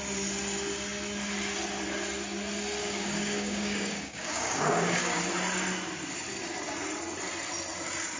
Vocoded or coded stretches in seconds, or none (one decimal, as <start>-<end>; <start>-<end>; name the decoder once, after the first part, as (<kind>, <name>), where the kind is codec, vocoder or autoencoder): 2.8-5.2 (codec, DAC)